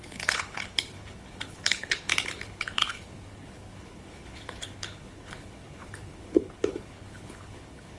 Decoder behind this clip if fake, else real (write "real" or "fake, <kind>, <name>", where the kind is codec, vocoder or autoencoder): fake, codec, HILCodec